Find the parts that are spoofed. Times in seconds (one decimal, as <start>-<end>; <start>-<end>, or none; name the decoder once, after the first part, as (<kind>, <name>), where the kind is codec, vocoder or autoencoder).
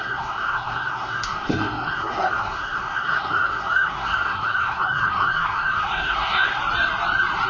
0.0-6.6 (codec, SNAC)